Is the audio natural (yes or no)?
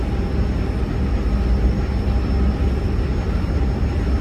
yes